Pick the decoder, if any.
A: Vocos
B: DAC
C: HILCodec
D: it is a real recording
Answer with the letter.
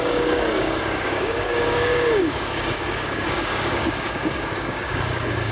B